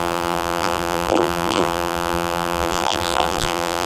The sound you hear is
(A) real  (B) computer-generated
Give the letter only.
B